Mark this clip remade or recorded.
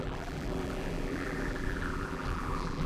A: remade